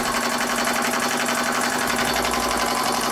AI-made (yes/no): no